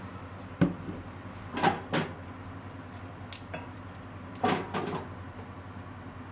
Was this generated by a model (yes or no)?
no